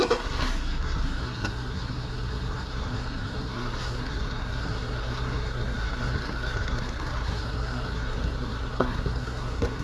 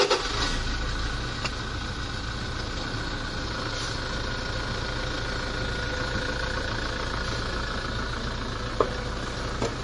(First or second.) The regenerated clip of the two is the first